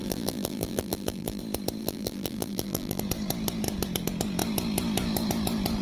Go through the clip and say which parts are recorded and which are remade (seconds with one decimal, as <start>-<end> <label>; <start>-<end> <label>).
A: 0.0-1.4 remade; 1.4-1.8 recorded; 1.8-3.0 remade; 3.0-5.8 recorded